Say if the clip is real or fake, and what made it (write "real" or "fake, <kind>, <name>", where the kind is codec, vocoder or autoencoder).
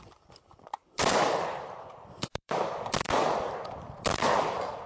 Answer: fake, vocoder, BigVGAN v2